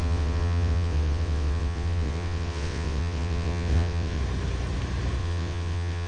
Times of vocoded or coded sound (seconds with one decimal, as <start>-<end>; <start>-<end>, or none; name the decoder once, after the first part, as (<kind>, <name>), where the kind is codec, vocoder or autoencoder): 0.0-4.2 (vocoder, WaveNeXt); 5.2-6.1